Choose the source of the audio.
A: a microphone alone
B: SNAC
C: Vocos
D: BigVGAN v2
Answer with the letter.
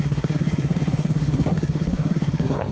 B